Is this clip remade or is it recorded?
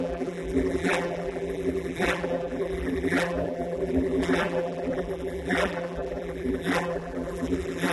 remade